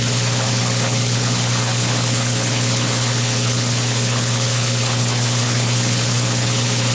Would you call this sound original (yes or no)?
no